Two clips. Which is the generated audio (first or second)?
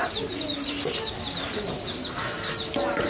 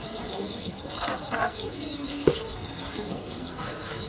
second